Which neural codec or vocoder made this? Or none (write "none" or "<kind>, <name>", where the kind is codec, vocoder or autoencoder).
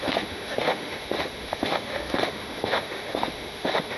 autoencoder, DAC-VAE